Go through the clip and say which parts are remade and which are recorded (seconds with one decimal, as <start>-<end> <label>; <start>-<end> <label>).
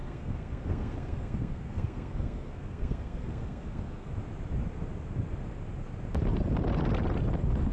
0.0-4.1 remade; 4.1-7.7 recorded